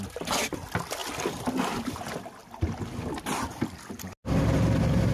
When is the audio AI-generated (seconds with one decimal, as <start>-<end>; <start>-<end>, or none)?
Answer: none